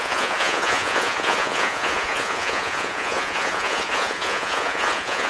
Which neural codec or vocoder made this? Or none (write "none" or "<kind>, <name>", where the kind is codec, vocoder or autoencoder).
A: vocoder, Vocos